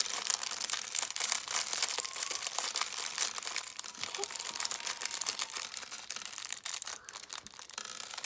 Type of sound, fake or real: fake